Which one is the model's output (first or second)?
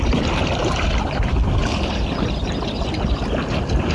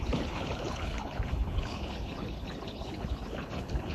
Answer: second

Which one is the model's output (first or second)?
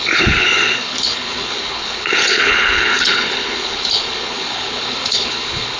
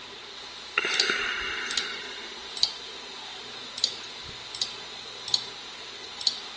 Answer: first